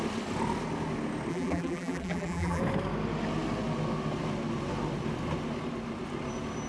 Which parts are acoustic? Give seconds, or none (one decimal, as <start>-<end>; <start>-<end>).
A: 0.0-1.3; 2.6-6.7